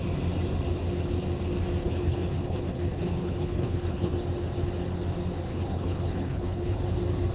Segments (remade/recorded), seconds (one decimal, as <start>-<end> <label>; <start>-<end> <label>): 0.0-1.8 recorded; 1.8-4.1 remade; 4.1-5.5 recorded; 5.5-6.8 remade; 6.8-7.3 recorded

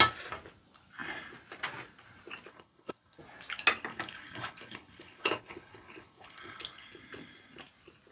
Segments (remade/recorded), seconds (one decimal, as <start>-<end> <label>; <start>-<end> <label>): 0.0-2.5 recorded; 2.5-3.2 remade; 3.2-3.9 recorded; 3.9-6.6 remade; 6.6-8.1 recorded

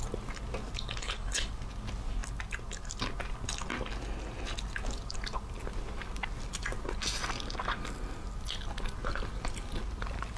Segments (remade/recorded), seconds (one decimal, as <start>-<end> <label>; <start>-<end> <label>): 0.0-1.0 recorded; 1.0-1.5 remade; 1.5-10.4 recorded